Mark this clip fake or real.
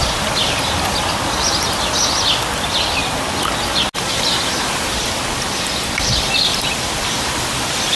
real